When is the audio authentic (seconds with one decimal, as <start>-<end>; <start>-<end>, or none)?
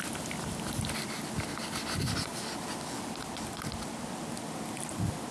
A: 0.0-5.3